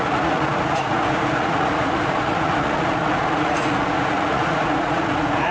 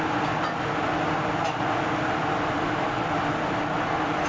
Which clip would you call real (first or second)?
second